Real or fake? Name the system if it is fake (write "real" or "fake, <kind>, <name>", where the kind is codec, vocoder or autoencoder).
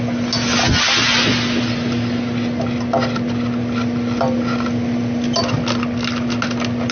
real